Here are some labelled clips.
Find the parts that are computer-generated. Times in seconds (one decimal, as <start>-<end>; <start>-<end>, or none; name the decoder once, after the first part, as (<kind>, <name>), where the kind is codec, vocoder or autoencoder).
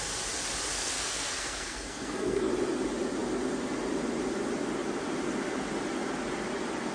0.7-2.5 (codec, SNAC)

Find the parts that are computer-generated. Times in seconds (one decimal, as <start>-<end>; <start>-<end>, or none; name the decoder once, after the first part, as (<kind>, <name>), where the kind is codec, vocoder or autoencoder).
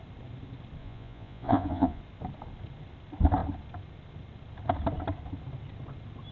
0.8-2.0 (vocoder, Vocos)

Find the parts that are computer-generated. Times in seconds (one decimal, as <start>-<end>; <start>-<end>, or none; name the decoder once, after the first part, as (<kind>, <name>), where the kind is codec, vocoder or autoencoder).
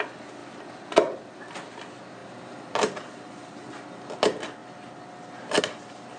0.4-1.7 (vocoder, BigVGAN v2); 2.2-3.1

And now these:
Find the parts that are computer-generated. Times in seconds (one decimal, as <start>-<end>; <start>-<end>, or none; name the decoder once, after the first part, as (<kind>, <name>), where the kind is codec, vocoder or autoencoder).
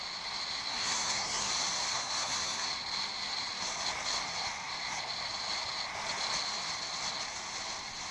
0.7-1.5 (codec, SNAC); 1.9-2.7